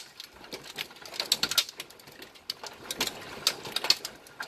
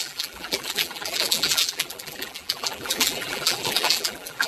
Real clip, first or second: first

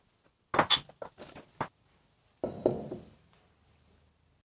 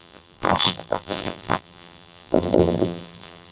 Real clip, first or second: first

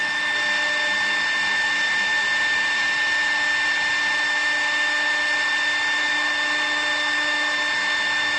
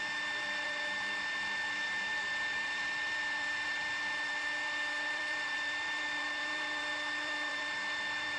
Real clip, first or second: first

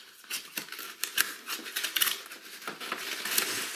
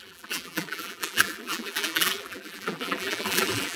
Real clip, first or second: first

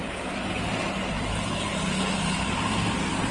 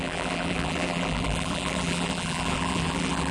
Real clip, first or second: first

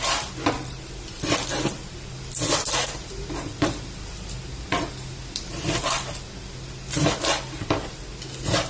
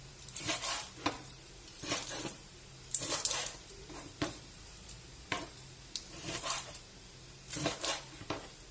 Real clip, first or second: first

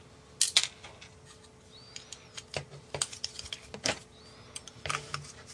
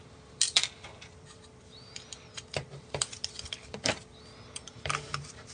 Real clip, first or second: first